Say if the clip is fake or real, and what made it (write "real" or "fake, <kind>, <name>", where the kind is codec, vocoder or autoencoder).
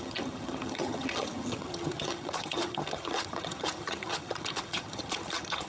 fake, vocoder, HiFi-GAN